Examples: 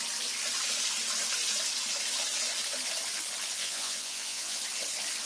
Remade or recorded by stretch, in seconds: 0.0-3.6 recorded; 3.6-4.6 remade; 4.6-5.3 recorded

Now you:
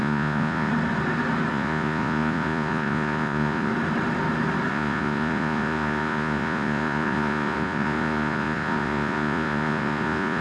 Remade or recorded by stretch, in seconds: 0.0-0.7 remade; 0.7-1.5 recorded; 1.5-3.7 remade; 3.7-4.7 recorded; 4.7-10.4 remade